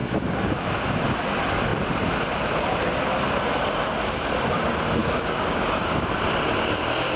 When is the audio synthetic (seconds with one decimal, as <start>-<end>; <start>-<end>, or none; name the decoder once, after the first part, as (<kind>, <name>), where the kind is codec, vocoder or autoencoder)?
0.0-0.7 (codec, DAC); 5.0-6.1